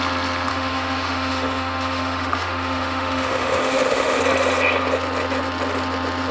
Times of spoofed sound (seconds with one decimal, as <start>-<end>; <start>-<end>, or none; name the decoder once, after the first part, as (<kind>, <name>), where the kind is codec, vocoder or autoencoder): 0.5-4.2 (autoencoder, DAC-VAE)